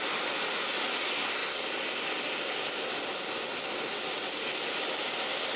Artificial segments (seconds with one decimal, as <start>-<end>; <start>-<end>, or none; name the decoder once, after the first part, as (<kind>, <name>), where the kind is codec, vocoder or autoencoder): none